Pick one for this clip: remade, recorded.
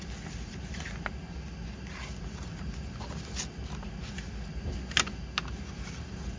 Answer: recorded